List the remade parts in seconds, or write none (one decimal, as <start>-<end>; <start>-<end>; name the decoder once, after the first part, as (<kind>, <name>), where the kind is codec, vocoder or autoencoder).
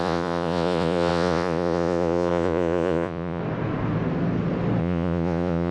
0.0-3.4 (vocoder, Vocos); 4.8-5.7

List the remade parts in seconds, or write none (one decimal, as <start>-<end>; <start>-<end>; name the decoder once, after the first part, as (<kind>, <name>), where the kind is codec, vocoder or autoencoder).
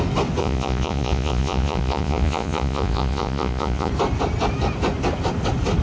0.4-3.9 (vocoder, Vocos)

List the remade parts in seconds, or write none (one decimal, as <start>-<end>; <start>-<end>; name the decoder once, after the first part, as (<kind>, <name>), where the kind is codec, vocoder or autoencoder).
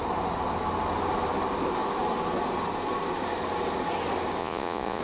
4.4-5.0 (vocoder, Vocos)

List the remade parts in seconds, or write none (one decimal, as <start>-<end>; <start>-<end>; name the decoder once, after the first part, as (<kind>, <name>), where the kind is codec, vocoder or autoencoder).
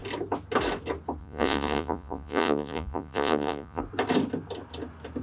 1.2-3.8 (vocoder, Vocos)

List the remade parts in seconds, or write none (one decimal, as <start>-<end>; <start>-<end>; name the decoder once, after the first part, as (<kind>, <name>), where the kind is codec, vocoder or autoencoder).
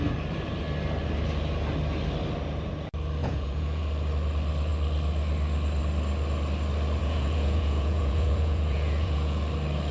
3.2-3.8 (vocoder, Vocos); 7.0-9.4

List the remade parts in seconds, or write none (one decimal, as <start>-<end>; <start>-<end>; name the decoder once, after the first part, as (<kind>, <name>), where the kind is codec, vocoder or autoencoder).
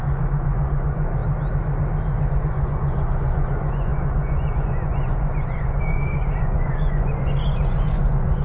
0.0-1.2 (vocoder, Vocos); 2.3-8.4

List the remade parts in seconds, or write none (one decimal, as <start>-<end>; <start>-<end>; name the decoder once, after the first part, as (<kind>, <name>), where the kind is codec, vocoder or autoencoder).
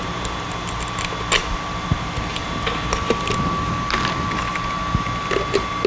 none